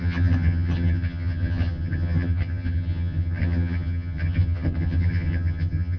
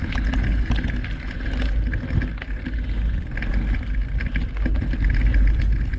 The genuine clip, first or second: second